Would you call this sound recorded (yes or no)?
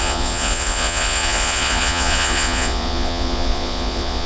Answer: no